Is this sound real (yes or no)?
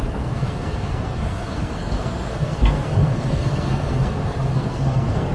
no